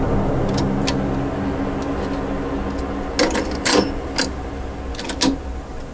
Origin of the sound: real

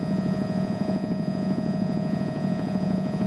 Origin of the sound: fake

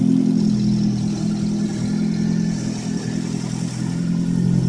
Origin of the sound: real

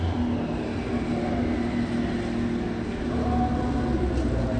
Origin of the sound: real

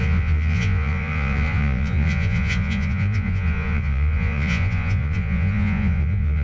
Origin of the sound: fake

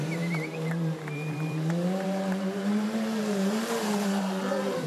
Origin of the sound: fake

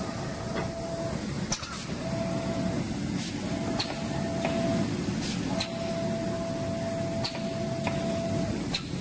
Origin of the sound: real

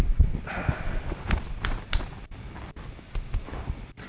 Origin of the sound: real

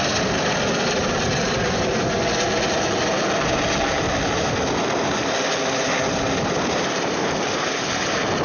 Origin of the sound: real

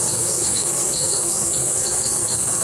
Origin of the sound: fake